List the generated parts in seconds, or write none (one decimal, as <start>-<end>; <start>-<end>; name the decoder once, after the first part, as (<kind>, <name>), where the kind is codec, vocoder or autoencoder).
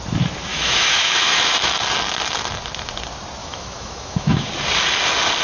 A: 0.5-1.7 (autoencoder, DAC-VAE); 3.4-4.5